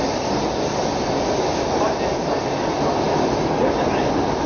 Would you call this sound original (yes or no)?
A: yes